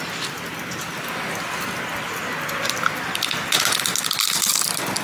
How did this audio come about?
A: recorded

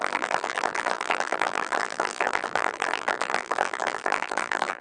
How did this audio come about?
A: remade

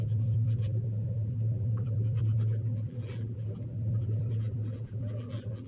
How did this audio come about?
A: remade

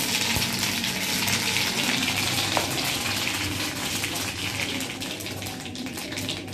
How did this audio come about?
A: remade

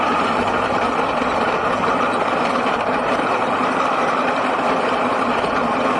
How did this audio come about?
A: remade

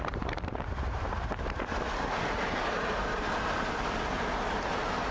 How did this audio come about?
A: remade